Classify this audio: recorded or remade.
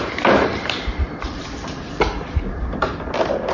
remade